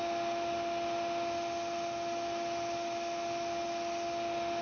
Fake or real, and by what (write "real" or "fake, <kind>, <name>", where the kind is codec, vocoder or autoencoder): real